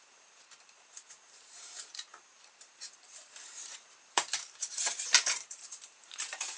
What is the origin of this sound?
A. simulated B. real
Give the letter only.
A